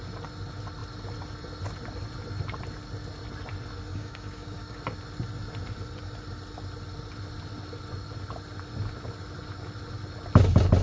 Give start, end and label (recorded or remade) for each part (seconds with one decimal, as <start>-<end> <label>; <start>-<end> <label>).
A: 0.0-3.9 recorded; 3.9-4.8 remade; 4.8-10.8 recorded